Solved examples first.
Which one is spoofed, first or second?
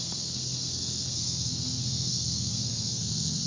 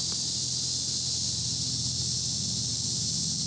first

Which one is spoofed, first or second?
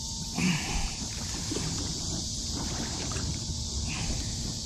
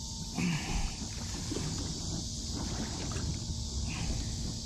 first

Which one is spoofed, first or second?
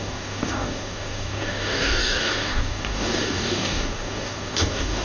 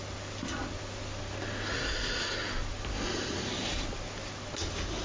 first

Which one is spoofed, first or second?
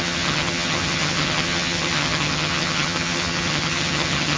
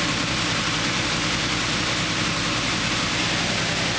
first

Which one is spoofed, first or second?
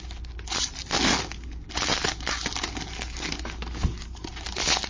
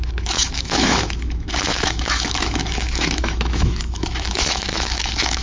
second